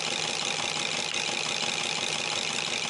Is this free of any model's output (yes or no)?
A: yes